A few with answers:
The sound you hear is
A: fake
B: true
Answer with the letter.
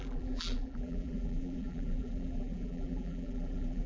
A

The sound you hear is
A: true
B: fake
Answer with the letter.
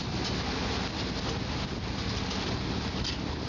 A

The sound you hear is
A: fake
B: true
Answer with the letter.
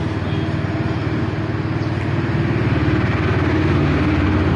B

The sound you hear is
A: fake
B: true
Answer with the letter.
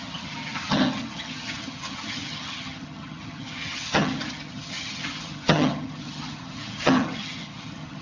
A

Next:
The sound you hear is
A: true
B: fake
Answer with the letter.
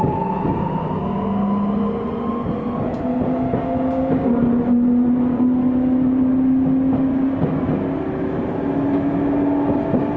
A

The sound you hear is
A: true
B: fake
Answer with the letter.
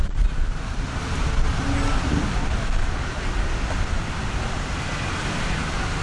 A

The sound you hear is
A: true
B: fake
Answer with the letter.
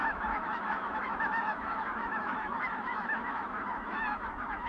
B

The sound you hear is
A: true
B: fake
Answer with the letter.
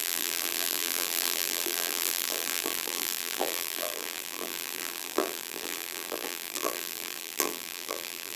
B